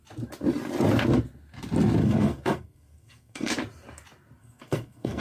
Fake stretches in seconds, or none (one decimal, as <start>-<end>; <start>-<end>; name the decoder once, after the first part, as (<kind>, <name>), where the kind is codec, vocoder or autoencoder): 2.0-3.5 (codec, SNAC); 4.4-5.2